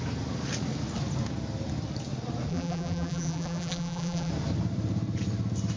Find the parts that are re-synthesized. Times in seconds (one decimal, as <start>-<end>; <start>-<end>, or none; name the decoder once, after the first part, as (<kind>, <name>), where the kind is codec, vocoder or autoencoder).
2.5-4.3 (vocoder, BigVGAN v2)